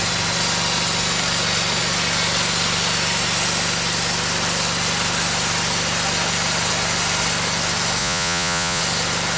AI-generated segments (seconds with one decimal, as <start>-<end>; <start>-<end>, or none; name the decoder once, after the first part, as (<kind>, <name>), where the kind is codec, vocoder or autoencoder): 8.0-8.8 (vocoder, Vocos)